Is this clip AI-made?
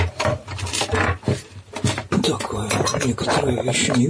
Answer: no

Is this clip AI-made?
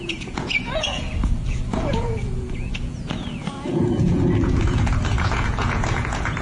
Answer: yes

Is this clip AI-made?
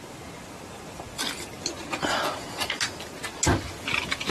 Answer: no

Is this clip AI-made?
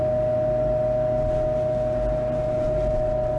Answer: no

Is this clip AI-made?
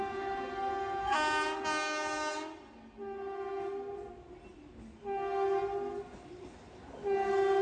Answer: no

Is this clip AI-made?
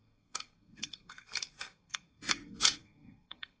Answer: yes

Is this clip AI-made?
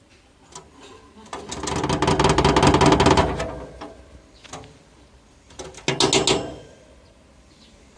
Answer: no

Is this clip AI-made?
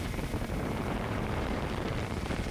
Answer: yes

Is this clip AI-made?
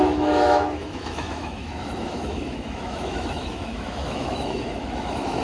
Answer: yes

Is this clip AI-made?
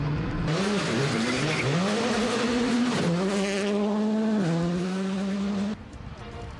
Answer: no